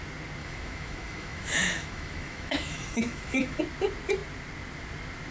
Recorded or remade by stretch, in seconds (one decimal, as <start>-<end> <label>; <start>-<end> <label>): 0.0-0.4 recorded; 0.4-3.6 remade; 3.6-5.3 recorded